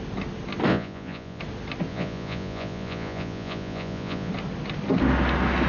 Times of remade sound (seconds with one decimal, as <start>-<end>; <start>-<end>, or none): 0.7-1.4; 1.9-4.3